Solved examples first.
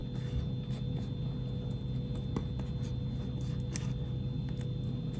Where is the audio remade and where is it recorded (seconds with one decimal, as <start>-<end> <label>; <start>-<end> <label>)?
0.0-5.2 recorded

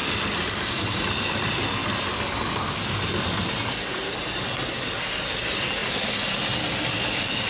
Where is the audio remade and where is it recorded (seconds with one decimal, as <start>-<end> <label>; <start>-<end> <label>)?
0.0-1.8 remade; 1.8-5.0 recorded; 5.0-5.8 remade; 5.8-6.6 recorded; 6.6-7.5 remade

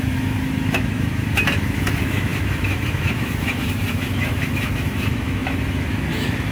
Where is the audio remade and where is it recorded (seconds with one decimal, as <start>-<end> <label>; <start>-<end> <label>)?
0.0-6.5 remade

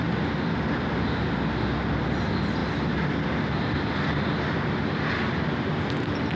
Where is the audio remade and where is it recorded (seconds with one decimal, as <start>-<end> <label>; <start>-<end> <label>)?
0.0-6.4 recorded